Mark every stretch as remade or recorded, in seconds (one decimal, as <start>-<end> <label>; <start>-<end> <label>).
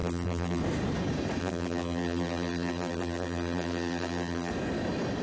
0.0-0.6 remade; 0.6-1.4 recorded; 1.4-4.5 remade; 4.5-5.2 recorded